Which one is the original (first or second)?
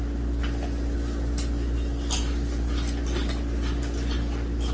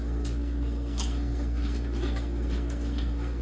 first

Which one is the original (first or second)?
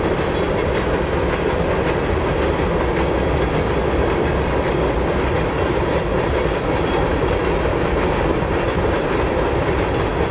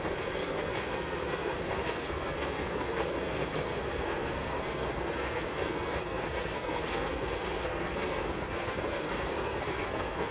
first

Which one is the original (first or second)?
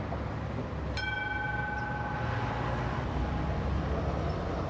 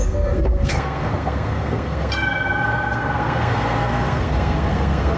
first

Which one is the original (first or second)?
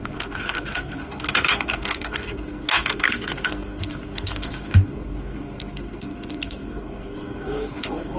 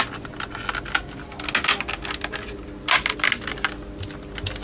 second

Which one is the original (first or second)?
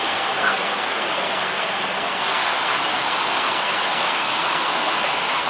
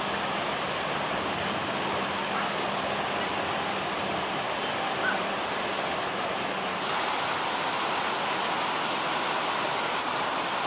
second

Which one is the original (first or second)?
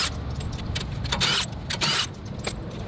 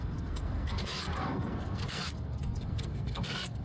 first